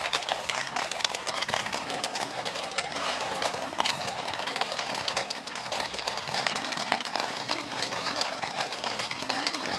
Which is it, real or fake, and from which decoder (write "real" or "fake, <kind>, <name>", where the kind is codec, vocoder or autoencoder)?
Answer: fake, codec, SNAC